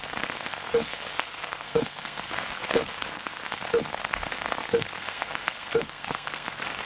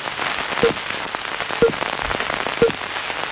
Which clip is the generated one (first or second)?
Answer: first